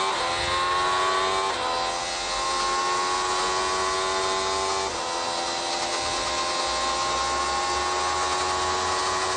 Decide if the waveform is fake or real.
real